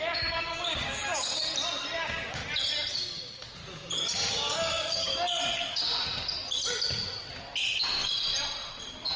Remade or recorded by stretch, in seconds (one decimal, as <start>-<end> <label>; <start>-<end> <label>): 0.0-1.4 remade; 1.4-2.0 recorded; 2.0-2.4 remade; 2.4-2.9 recorded; 2.9-3.6 remade; 3.6-4.3 recorded; 4.3-5.1 remade; 5.1-9.2 recorded